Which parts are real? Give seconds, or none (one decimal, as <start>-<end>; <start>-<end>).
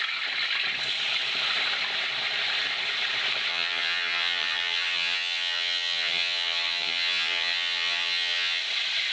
0.0-3.5; 8.6-9.1